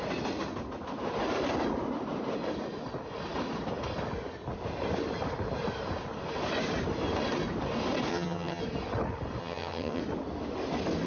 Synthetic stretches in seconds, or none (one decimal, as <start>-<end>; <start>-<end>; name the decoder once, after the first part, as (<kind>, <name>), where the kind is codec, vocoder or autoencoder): 8.1-8.6 (vocoder, HiFi-GAN); 9.4-10.0

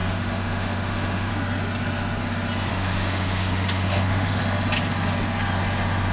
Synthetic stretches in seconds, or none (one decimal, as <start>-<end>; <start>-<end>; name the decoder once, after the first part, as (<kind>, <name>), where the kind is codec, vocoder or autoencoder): 0.0-1.3 (autoencoder, DAC-VAE); 2.7-4.4

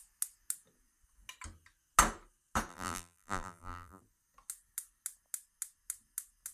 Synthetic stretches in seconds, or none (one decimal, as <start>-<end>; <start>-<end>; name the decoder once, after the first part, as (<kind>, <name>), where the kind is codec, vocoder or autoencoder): 2.7-4.0 (vocoder, BigVGAN v2)

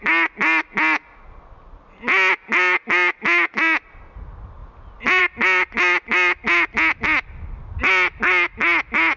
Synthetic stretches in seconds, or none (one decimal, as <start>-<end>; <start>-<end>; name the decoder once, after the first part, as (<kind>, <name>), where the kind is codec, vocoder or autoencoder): none